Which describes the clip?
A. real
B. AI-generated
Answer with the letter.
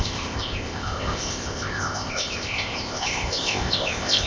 B